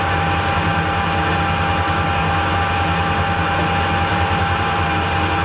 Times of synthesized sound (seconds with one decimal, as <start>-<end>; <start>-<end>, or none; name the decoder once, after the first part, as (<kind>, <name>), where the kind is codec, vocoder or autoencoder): 4.1-4.9 (vocoder, BigVGAN v2)